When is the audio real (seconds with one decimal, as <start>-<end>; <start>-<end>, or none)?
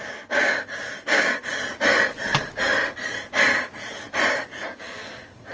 1.5-4.3